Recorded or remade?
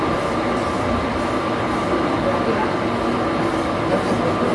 recorded